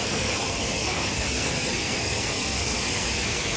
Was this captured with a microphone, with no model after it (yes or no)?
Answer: no